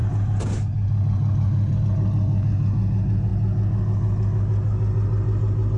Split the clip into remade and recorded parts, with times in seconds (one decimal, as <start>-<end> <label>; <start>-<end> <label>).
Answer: 0.0-1.8 remade; 1.8-5.8 recorded